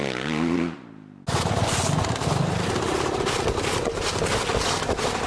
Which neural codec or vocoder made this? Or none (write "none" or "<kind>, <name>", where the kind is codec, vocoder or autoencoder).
none